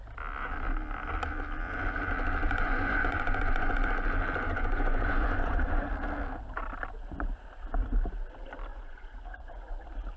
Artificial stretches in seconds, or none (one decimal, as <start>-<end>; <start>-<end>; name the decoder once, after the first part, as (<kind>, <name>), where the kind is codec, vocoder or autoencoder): 2.4-3.7 (vocoder, Vocos); 4.5-5.9; 8.7-9.5